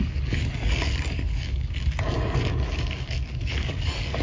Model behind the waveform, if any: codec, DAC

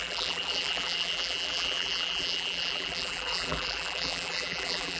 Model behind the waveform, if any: vocoder, BigVGAN v2